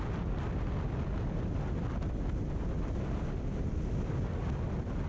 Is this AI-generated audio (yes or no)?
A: no